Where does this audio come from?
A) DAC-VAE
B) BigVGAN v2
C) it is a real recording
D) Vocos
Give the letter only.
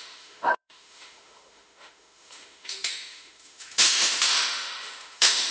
A